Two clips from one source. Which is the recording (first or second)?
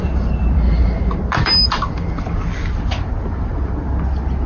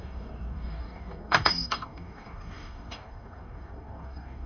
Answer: first